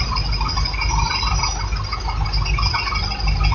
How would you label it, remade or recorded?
recorded